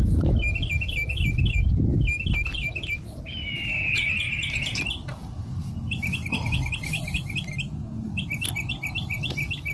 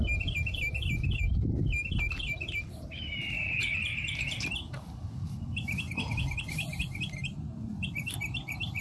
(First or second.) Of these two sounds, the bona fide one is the first